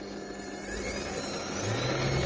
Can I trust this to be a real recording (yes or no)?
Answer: yes